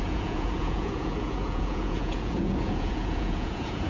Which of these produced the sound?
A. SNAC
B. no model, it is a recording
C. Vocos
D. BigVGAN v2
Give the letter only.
C